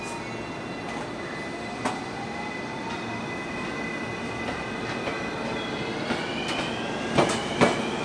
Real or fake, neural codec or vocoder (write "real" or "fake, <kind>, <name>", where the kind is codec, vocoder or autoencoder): real